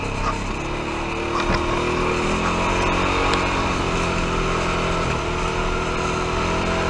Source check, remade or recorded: recorded